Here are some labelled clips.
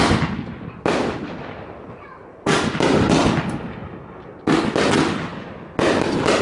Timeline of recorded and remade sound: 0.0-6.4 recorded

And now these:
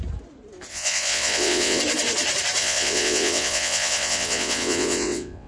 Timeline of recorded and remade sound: 0.0-0.7 recorded; 0.7-1.8 remade; 1.8-2.6 recorded; 2.6-5.5 remade

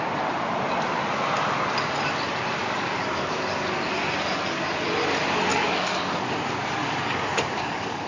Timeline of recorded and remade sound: 0.0-2.6 recorded; 2.6-3.9 remade; 3.9-5.5 recorded; 5.5-6.3 remade; 6.3-6.8 recorded; 6.8-8.1 remade

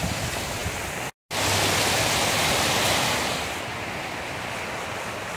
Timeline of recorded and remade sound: 0.0-5.4 recorded

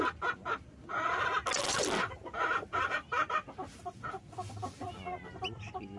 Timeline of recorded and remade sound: 0.0-6.0 remade

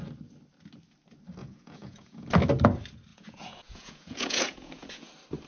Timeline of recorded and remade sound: 0.0-1.4 recorded; 1.4-2.3 remade; 2.3-3.1 recorded; 3.1-5.1 remade; 5.1-5.5 recorded

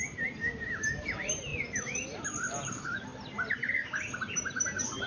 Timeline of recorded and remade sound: 0.0-1.5 remade; 1.5-2.7 recorded; 2.7-3.1 remade; 3.1-4.2 recorded; 4.2-5.1 remade

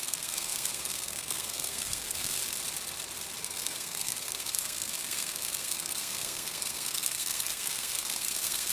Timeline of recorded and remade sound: 0.0-2.4 remade; 2.4-3.4 recorded; 3.4-8.7 remade